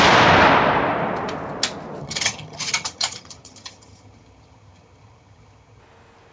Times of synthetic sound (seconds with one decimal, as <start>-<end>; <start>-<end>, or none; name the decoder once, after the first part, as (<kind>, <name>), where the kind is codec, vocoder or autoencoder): 2.0-5.8 (vocoder, HiFi-GAN)